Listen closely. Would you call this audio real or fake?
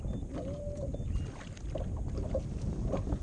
real